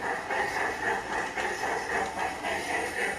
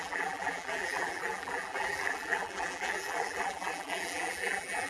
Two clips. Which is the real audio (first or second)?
first